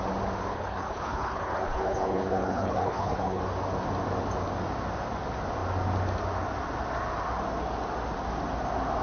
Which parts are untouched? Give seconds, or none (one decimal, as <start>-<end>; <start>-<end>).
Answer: 0.0-0.5; 3.4-9.0